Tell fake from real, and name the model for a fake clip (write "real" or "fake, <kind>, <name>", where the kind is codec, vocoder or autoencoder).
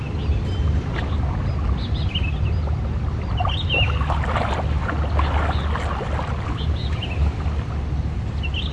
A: real